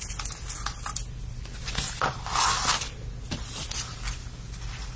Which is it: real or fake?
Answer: real